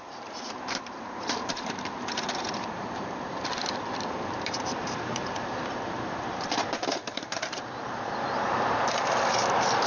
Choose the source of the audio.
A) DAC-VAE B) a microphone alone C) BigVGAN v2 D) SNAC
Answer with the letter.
C